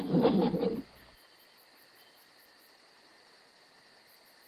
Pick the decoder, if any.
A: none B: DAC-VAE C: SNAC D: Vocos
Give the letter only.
A